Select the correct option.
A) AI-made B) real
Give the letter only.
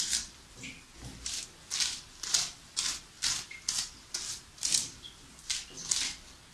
B